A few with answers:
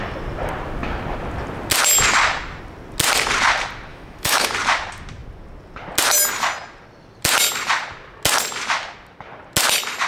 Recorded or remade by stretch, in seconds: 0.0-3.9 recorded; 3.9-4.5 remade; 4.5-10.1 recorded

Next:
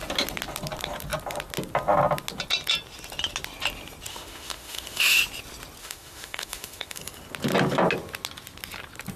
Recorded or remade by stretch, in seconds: 0.0-4.1 recorded; 4.1-5.2 remade; 5.2-5.8 recorded; 5.8-7.0 remade; 7.0-9.2 recorded

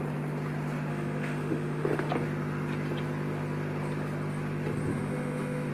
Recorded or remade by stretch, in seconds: 0.0-0.9 recorded; 0.9-2.1 remade; 2.1-4.9 recorded; 4.9-5.7 remade

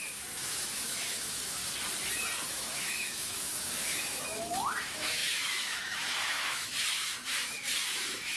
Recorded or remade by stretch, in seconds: 0.0-1.6 remade; 1.6-2.5 recorded; 2.5-8.4 remade

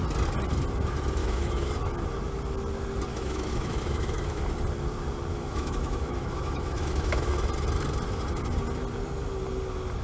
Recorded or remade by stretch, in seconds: 0.0-1.2 recorded; 1.2-1.7 remade; 1.7-3.1 recorded; 3.1-4.4 remade; 4.4-5.3 recorded; 5.3-7.3 remade; 7.3-10.0 recorded

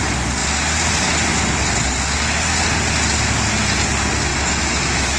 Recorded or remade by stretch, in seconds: 0.0-4.3 recorded; 4.3-5.2 remade

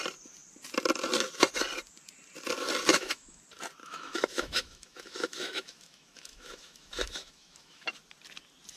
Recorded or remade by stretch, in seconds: 0.0-2.9 recorded; 2.9-3.4 remade; 3.4-3.8 recorded; 3.8-7.9 remade; 7.9-8.8 recorded